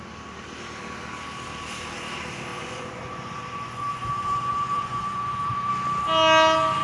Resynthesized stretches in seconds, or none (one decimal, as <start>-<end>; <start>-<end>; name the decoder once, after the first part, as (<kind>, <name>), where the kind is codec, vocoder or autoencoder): 2.5-5.7 (vocoder, Vocos)